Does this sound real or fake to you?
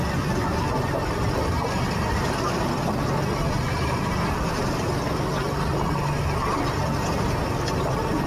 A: real